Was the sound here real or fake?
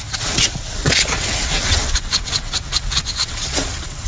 fake